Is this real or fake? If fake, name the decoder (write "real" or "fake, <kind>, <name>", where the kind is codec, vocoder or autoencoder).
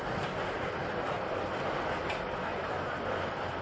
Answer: real